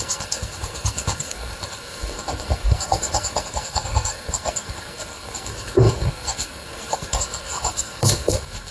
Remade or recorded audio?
remade